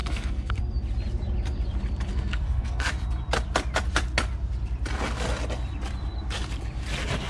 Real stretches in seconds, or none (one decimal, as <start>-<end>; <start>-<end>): 0.6-2.1; 2.9-7.3